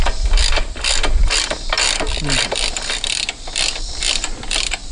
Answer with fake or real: real